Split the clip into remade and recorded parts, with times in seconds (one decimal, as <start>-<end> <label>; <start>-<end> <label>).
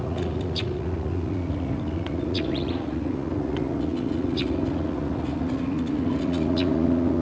0.0-7.2 remade